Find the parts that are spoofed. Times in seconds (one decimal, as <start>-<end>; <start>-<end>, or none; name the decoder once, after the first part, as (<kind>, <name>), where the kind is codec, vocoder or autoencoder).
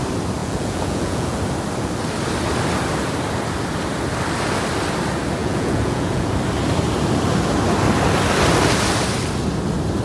0.4-1.4 (vocoder, Vocos); 5.4-6.3